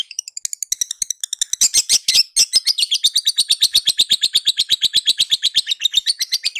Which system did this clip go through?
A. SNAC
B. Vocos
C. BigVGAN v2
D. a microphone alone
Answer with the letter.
D